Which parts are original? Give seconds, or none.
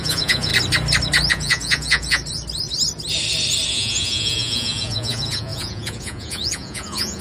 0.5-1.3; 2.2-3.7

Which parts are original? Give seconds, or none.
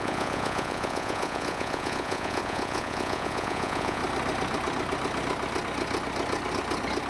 4.0-7.1